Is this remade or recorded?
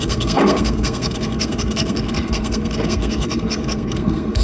remade